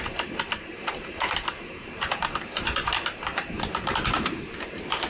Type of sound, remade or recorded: remade